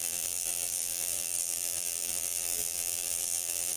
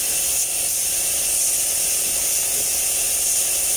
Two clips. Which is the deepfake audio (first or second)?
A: first